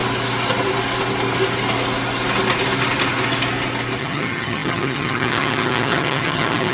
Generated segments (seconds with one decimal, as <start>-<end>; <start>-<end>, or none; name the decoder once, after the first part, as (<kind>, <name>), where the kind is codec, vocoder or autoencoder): 4.0-6.7 (vocoder, HiFi-GAN)